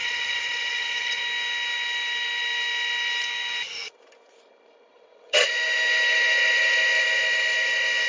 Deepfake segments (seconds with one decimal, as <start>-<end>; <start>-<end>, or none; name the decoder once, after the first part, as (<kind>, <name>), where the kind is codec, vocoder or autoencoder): 0.0-1.2 (vocoder, WaveNeXt); 4.9-5.5